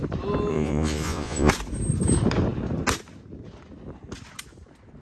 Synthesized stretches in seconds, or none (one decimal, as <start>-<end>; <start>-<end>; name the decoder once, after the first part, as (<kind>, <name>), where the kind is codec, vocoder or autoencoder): 0.5-1.5 (vocoder, Vocos)